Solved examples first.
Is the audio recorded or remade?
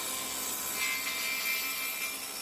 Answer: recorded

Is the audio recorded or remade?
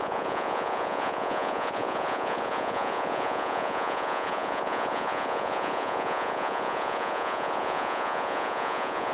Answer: remade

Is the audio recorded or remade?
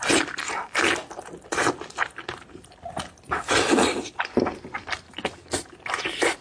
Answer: recorded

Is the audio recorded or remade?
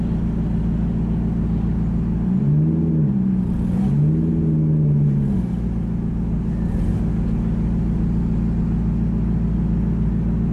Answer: recorded